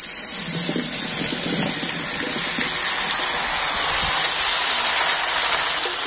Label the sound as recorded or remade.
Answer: recorded